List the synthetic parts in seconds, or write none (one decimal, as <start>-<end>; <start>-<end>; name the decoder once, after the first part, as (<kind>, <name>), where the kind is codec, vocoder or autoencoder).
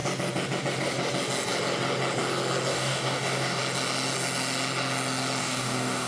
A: 2.7-3.6 (codec, DAC); 5.4-6.1